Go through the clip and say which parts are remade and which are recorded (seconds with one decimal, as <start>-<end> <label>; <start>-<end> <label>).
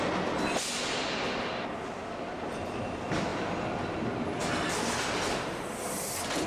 0.0-6.5 recorded